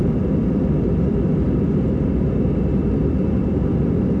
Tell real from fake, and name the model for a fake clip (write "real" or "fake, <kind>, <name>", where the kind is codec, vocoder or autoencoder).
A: real